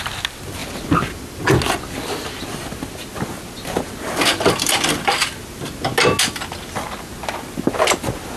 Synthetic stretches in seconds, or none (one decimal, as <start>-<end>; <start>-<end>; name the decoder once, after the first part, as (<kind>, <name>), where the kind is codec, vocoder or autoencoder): 4.3-5.7 (vocoder, BigVGAN v2)